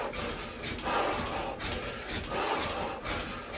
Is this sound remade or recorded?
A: recorded